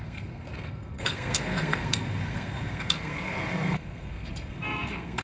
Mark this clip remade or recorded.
remade